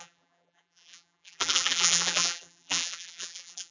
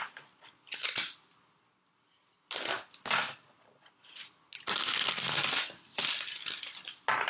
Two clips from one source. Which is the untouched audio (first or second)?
second